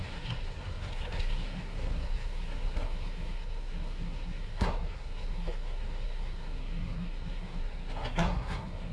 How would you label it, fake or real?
fake